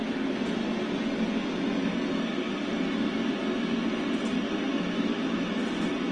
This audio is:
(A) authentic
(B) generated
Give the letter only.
A